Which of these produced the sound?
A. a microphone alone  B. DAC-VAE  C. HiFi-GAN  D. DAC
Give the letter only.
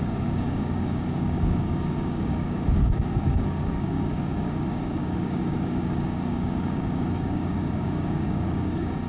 D